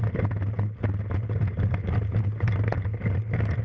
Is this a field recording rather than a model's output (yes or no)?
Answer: yes